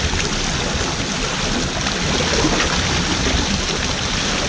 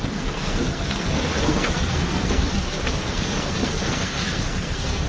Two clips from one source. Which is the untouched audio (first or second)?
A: first